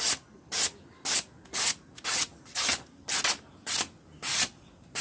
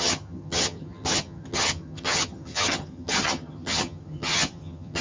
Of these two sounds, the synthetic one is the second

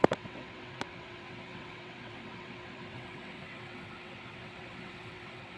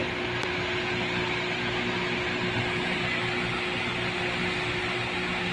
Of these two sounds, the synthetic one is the first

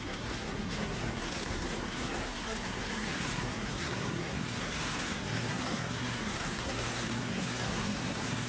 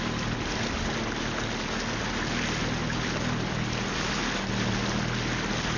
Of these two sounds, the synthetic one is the first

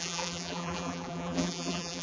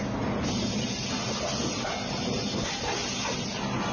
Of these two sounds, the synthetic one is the first